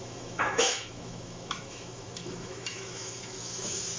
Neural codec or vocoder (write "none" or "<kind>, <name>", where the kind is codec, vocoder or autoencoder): autoencoder, DAC-VAE